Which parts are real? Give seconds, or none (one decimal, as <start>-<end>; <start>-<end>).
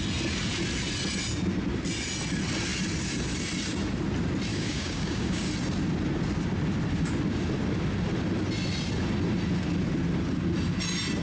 0.0-4.5; 5.5-11.2